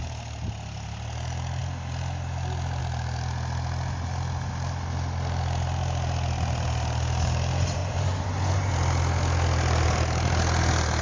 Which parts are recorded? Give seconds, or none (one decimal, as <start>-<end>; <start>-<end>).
0.0-7.8; 8.7-11.0